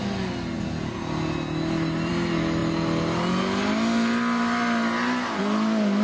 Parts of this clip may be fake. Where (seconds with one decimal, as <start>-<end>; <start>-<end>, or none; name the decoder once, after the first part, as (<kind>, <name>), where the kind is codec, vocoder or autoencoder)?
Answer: none